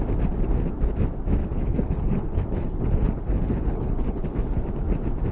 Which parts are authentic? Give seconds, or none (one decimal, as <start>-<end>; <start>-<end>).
0.0-1.4; 4.6-5.3